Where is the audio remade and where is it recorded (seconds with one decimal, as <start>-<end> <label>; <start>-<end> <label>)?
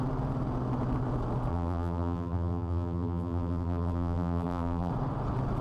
0.0-1.5 recorded; 1.5-4.9 remade; 4.9-5.6 recorded